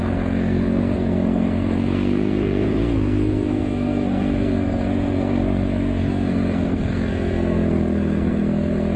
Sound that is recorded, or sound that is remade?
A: remade